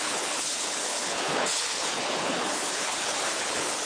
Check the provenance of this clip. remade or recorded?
remade